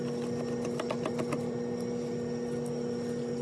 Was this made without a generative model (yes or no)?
yes